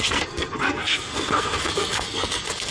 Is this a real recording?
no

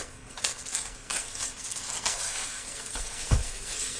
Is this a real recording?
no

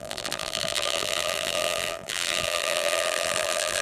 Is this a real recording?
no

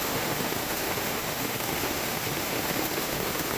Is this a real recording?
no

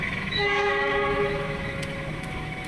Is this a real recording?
no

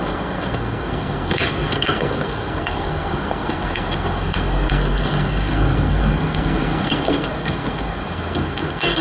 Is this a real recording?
no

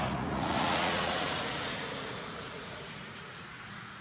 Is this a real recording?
no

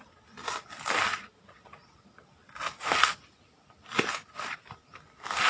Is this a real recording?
no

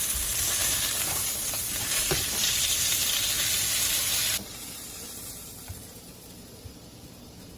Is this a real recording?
no